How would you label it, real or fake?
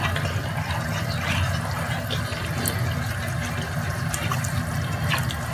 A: real